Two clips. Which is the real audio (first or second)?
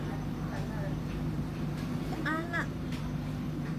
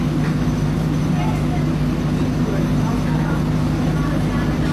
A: second